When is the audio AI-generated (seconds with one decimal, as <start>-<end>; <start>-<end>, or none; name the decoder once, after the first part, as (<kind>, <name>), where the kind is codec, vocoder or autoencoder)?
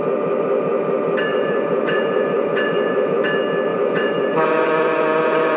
1.3-3.1 (vocoder, Vocos); 3.7-5.6